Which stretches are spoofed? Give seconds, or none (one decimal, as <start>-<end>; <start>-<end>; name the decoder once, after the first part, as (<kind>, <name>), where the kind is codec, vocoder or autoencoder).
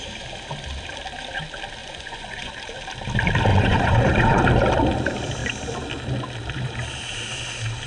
1.8-2.5 (vocoder, Vocos); 3.5-4.4